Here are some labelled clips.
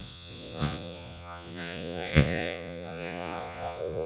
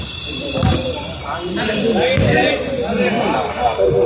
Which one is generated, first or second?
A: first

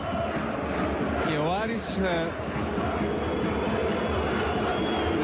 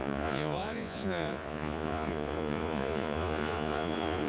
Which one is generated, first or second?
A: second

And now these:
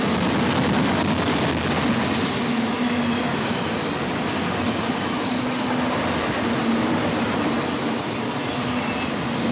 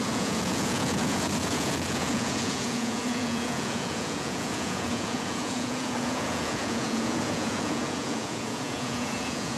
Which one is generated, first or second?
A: second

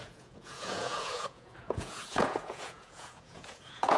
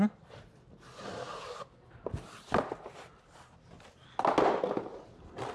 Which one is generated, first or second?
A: first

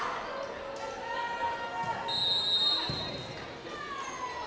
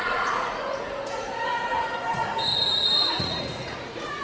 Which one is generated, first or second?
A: second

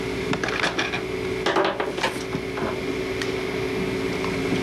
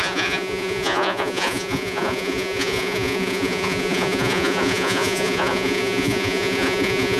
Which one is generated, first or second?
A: second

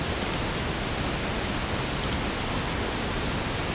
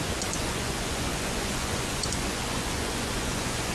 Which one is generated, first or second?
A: second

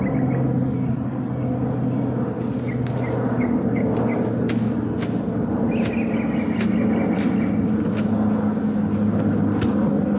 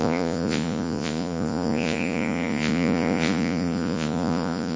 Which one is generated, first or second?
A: second